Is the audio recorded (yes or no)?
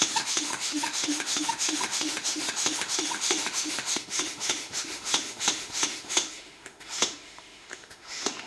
no